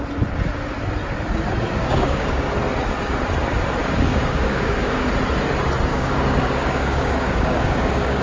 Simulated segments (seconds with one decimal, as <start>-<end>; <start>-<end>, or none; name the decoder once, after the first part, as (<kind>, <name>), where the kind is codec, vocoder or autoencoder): 1.8-2.5 (codec, DAC); 3.8-5.1; 5.9-8.2